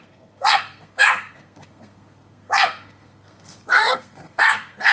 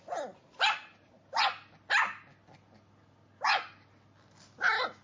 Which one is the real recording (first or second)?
second